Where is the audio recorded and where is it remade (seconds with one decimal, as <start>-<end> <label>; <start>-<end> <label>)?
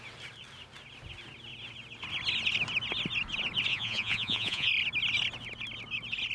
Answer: 0.0-3.7 recorded; 3.7-4.7 remade; 4.7-6.3 recorded